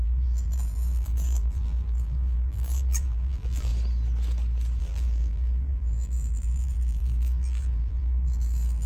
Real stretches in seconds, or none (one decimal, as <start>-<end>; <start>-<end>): 3.7-4.8